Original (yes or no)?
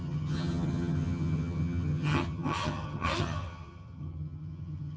no